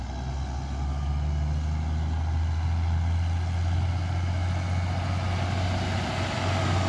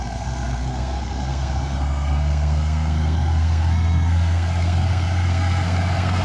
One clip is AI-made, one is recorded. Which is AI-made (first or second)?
second